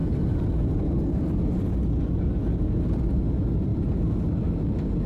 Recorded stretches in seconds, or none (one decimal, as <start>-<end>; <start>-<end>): 0.0-5.1